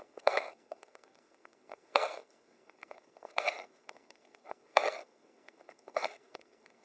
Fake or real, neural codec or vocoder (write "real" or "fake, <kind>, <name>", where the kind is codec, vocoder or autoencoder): fake, codec, SNAC